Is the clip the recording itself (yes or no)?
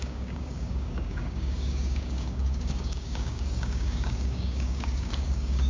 no